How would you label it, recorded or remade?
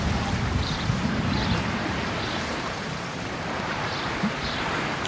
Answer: remade